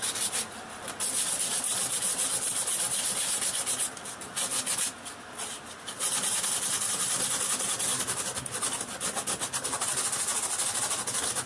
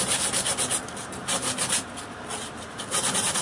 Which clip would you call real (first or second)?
first